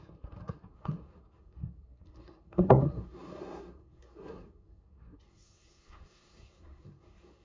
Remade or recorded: remade